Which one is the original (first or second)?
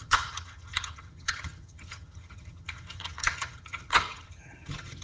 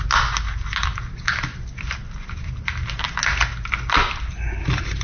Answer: second